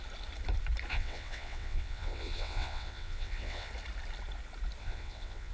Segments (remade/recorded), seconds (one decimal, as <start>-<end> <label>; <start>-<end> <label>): 0.0-0.9 recorded; 0.9-3.7 remade; 3.7-4.8 recorded; 4.8-5.5 remade